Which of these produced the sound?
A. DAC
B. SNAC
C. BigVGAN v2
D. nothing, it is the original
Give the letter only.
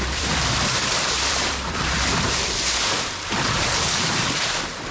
C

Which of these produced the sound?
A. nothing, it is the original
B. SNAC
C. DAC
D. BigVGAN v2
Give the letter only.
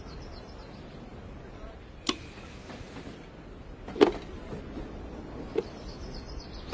A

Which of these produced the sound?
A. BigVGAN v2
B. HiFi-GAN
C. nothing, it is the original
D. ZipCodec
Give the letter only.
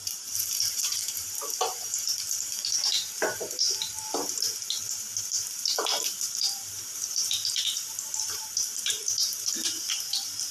A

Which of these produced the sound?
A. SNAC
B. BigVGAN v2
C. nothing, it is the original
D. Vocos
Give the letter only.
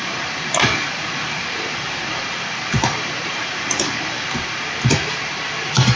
B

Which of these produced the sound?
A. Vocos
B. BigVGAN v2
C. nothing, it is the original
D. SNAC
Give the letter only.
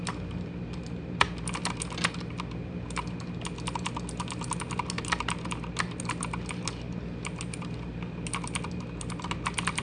C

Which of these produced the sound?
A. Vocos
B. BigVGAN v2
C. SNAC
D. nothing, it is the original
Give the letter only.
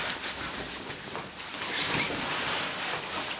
B